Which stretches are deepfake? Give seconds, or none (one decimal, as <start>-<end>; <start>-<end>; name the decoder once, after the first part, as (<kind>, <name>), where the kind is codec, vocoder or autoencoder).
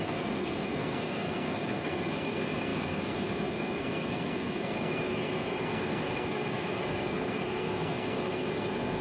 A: 0.0-9.0 (codec, SNAC)